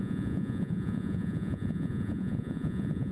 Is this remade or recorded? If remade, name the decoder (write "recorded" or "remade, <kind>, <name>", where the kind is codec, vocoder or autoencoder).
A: remade, vocoder, Vocos